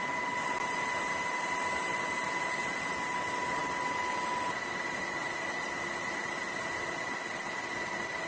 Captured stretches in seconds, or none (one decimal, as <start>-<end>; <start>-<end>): 0.0-8.3